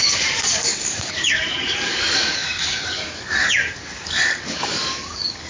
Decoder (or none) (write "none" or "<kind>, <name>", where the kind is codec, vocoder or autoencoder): codec, DAC